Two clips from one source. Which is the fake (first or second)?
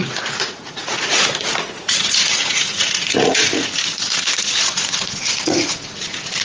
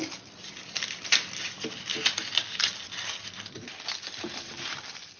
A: first